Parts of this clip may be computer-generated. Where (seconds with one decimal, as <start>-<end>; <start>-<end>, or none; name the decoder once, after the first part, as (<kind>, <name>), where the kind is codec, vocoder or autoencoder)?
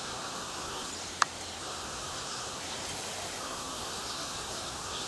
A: 0.0-0.9 (codec, SNAC); 1.6-2.6; 3.4-5.1